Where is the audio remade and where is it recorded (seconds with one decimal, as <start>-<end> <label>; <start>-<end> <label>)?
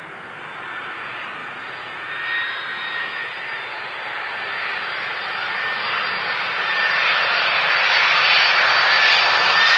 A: 0.0-1.4 recorded; 1.4-2.1 remade; 2.1-2.7 recorded; 2.7-3.4 remade; 3.4-9.8 recorded